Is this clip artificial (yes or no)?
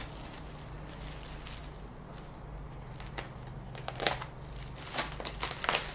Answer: no